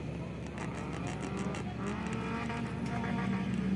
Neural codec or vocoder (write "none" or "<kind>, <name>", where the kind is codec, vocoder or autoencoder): none